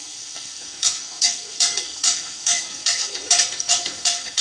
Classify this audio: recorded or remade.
remade